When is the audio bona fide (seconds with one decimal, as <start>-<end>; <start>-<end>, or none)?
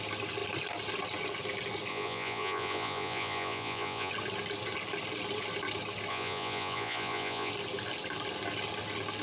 0.0-1.9; 4.1-6.1; 7.5-9.2